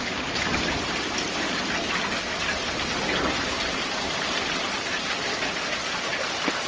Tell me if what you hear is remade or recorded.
recorded